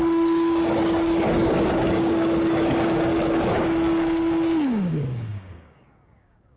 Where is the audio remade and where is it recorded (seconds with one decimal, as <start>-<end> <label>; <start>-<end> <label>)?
0.0-6.6 remade